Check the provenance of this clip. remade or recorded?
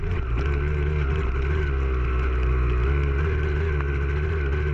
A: recorded